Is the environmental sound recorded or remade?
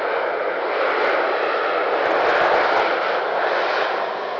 recorded